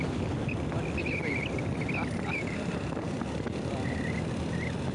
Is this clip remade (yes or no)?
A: no